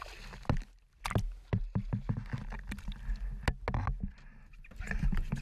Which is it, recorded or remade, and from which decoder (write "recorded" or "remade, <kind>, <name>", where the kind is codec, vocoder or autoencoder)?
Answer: recorded